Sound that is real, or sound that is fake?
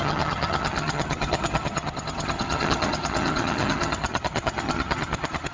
fake